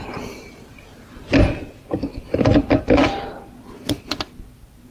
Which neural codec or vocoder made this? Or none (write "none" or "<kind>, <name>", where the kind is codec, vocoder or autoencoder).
none